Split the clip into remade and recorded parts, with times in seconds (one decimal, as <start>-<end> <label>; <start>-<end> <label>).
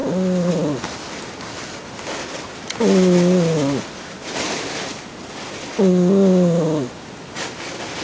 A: 0.0-8.0 recorded